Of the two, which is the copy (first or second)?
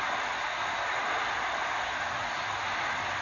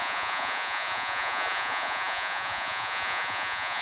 second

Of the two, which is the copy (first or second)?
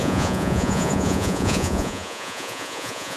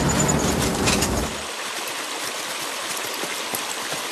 first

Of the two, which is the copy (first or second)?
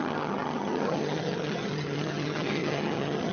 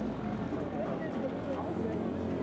first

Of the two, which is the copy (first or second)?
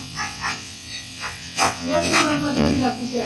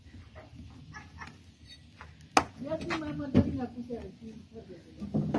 first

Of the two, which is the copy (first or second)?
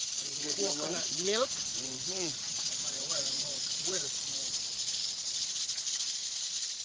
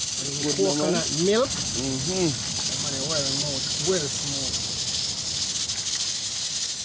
first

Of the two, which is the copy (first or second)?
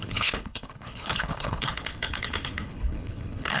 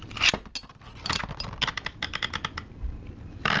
first